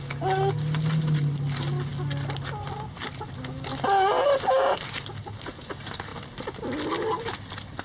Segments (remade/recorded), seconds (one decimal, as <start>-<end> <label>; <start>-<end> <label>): 0.0-7.8 recorded